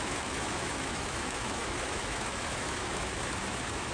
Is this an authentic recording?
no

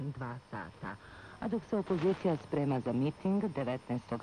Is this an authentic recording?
yes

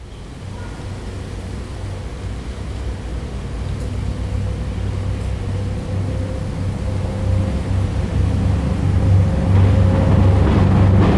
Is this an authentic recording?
yes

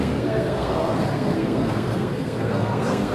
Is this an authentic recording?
no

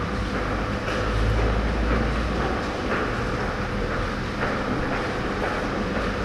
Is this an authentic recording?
yes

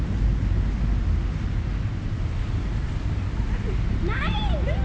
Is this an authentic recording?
yes